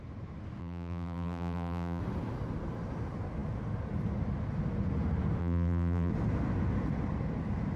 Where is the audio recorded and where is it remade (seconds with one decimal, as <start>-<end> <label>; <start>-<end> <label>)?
0.0-0.6 recorded; 0.6-2.0 remade; 2.0-5.4 recorded; 5.4-6.1 remade; 6.1-7.8 recorded